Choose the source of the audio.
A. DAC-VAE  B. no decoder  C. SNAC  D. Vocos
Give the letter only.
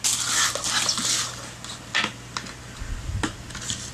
B